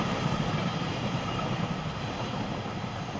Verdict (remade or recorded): recorded